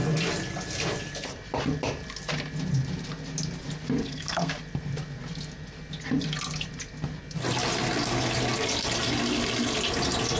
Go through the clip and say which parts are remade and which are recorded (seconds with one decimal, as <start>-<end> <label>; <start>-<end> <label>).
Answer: 0.0-4.0 recorded; 4.0-4.5 remade; 4.5-10.4 recorded